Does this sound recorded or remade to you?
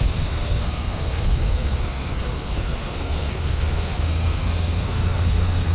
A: remade